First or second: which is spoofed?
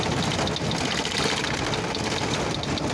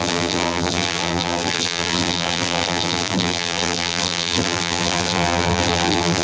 second